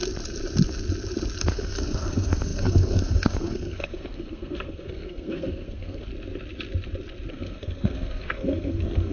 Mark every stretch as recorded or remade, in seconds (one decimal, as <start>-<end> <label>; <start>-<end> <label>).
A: 0.0-1.5 recorded; 1.5-6.1 remade; 6.1-7.3 recorded; 7.3-9.1 remade